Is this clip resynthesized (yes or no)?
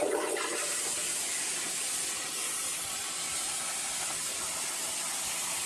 no